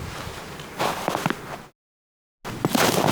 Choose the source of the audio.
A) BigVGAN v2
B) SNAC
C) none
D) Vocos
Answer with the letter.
C